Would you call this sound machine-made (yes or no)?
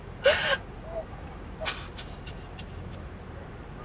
no